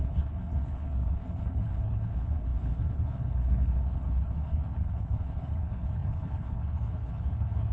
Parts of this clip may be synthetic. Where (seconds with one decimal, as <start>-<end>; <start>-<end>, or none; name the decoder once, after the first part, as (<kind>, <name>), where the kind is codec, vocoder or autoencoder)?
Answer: 0.0-7.7 (codec, HILCodec)

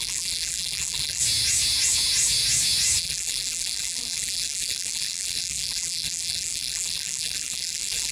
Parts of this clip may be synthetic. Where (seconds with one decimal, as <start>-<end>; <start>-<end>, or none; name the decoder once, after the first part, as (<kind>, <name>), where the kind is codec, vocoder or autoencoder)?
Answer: 0.0-1.2 (vocoder, BigVGAN v2); 3.0-8.1

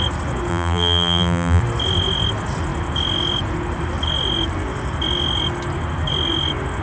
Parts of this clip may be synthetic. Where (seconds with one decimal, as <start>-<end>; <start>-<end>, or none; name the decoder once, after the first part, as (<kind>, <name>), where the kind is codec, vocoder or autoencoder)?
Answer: 0.5-1.6 (vocoder, BigVGAN v2)

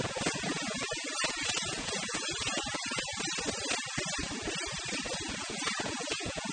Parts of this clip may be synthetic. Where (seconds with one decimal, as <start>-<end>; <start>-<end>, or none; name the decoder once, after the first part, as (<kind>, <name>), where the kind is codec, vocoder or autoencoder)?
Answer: 0.0-3.1 (vocoder, Vocos); 5.4-6.5

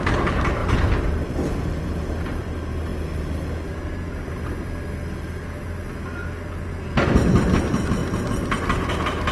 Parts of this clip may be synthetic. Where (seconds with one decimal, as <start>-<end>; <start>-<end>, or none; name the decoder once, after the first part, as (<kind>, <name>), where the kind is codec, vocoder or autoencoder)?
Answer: none